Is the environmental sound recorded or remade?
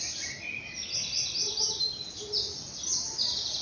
recorded